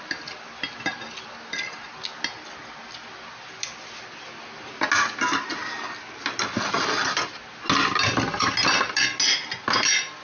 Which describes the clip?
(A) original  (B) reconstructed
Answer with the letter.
A